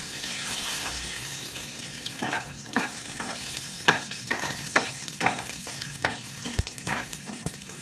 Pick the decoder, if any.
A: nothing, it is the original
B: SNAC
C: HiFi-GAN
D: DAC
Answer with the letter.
B